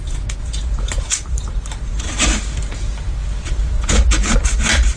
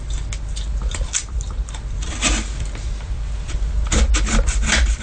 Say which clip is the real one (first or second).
second